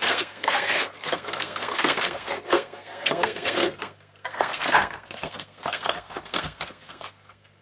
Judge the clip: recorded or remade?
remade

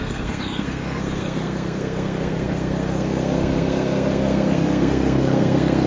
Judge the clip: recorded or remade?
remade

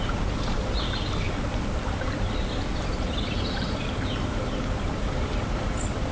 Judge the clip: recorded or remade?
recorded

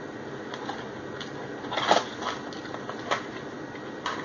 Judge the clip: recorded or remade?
recorded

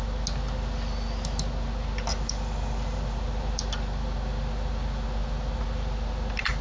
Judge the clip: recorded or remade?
recorded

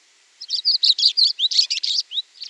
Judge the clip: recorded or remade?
remade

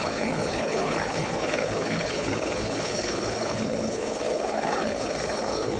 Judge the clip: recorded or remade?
remade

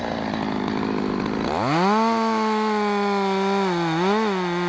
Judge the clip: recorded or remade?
recorded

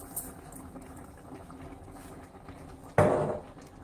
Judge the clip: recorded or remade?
recorded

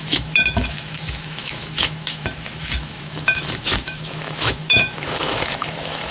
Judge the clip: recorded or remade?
remade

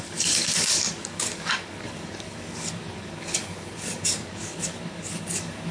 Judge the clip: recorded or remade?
remade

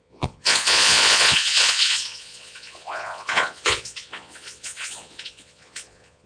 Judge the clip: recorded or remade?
remade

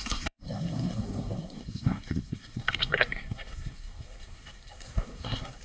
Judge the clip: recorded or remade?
remade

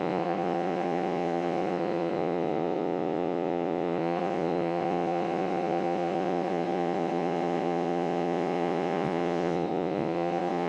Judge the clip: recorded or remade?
remade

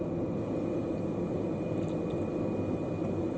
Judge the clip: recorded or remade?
recorded